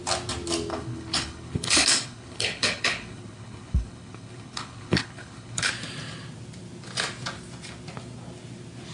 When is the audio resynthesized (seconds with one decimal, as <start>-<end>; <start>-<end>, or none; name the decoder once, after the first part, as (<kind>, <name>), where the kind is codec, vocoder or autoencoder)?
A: 0.7-5.7 (codec, HILCodec)